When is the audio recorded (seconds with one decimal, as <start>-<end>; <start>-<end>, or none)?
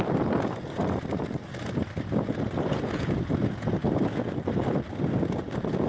0.0-5.9